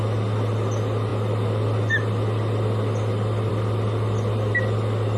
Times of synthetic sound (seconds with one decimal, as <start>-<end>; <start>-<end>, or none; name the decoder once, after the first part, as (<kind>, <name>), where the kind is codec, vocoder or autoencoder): none